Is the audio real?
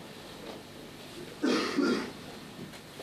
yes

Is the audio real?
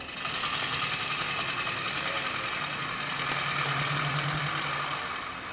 yes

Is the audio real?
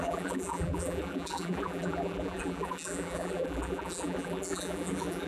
no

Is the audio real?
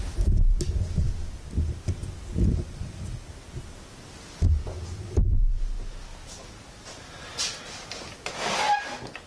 yes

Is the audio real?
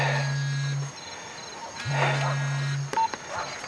yes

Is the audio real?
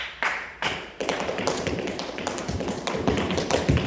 no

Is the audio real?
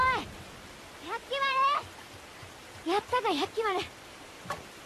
no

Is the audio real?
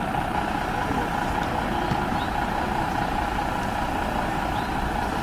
no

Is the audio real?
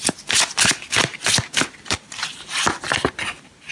yes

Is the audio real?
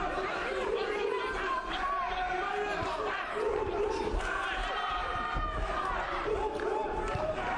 no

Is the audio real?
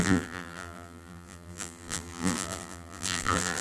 no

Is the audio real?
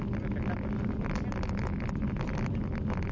yes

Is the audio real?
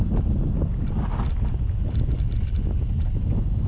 yes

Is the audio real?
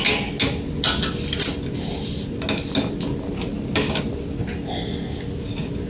yes